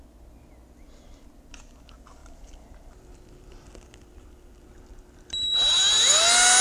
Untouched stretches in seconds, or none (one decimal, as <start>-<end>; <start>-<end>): 0.0-2.2; 5.5-6.6